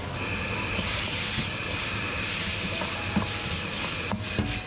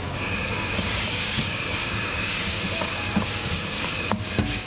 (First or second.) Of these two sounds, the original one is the first